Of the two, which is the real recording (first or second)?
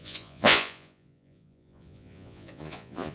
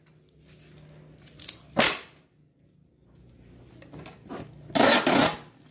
second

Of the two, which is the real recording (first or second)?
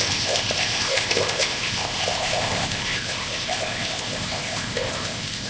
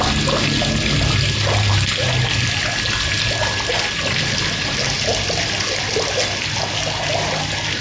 second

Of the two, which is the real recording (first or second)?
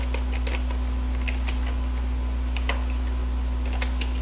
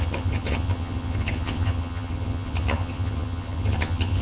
first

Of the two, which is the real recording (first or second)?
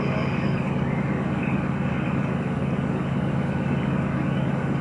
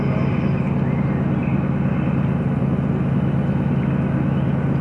second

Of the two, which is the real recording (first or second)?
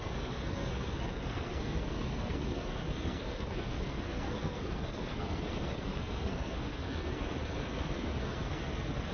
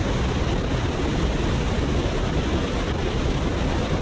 second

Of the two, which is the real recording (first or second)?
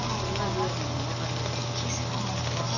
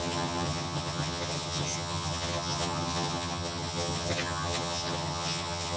first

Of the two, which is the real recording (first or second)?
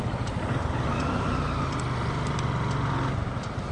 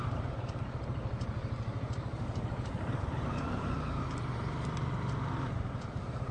first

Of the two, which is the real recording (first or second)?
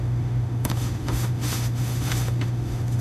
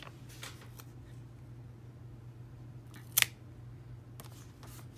second